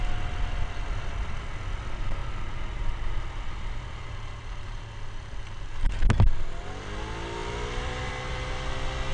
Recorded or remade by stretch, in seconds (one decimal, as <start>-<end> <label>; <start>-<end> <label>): 0.0-7.4 recorded; 7.4-8.1 remade; 8.1-9.1 recorded